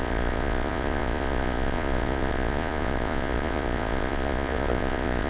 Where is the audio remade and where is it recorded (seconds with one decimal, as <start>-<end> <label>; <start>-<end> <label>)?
0.0-5.3 remade